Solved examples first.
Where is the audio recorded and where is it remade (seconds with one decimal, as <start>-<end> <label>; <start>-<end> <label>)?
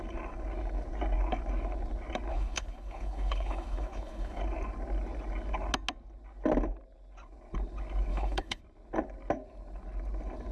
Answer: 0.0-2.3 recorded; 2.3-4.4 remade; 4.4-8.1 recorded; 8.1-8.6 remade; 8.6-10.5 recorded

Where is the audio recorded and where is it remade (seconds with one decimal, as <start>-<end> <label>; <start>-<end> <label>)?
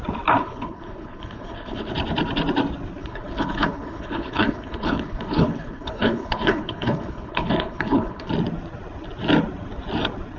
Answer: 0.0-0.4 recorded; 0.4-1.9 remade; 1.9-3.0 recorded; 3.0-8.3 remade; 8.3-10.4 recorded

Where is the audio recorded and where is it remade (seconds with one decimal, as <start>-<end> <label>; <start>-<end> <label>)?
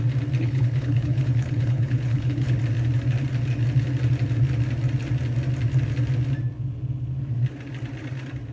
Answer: 0.0-0.4 recorded; 0.4-2.6 remade; 2.6-8.5 recorded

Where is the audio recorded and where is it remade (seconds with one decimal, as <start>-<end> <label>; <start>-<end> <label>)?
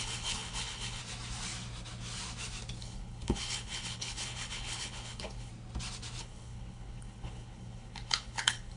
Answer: 0.0-1.0 remade; 1.0-2.8 recorded; 2.8-5.5 remade; 5.5-6.2 recorded; 6.2-8.8 remade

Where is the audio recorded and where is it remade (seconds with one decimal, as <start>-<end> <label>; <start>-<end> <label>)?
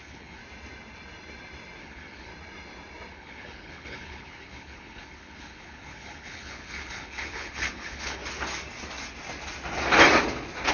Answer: 0.0-0.4 remade; 0.4-1.8 recorded; 1.8-2.3 remade; 2.3-3.1 recorded; 3.1-8.2 remade; 8.2-10.7 recorded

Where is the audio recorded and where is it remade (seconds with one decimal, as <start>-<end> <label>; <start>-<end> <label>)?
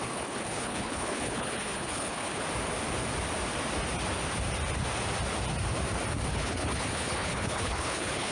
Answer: 0.0-2.4 remade; 2.4-6.3 recorded; 6.3-8.3 remade